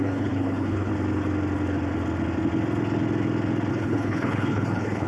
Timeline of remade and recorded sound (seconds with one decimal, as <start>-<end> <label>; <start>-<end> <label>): 0.0-0.9 remade; 0.9-3.7 recorded; 3.7-5.1 remade